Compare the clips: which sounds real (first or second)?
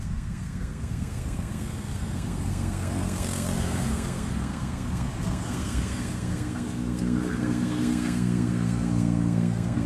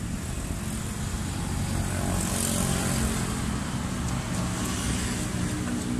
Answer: second